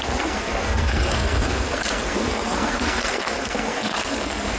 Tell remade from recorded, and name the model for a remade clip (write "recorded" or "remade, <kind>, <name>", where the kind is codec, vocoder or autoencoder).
remade, codec, SNAC